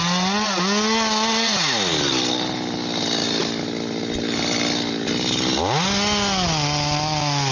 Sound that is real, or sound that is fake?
real